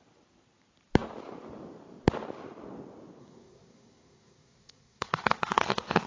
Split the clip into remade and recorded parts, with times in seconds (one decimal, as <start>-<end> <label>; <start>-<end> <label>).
0.0-3.2 recorded; 3.2-6.1 remade